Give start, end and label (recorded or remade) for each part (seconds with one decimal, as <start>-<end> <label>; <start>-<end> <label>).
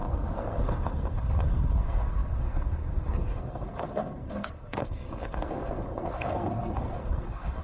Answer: 0.0-7.6 remade